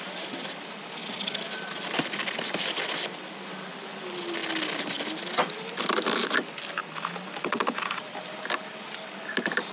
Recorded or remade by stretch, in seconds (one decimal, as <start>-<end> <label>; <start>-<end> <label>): 0.0-9.7 recorded